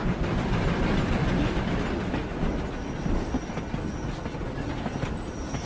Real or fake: real